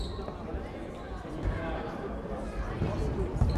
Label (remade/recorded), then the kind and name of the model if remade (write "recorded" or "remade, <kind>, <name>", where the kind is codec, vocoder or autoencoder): recorded